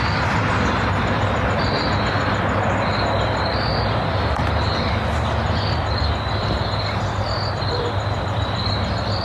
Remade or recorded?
recorded